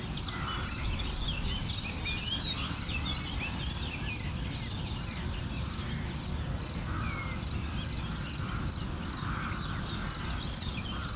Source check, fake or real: real